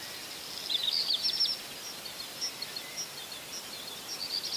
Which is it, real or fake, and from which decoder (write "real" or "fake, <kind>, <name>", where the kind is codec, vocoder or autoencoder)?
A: real